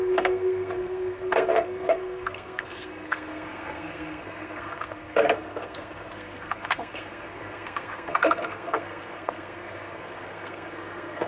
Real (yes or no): no